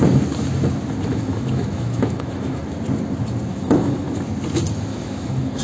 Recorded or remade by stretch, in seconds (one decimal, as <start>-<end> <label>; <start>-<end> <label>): 0.0-1.1 recorded; 1.1-2.6 remade; 2.6-3.5 recorded; 3.5-4.2 remade; 4.2-4.9 recorded; 4.9-5.6 remade